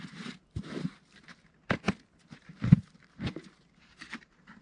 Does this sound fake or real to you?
fake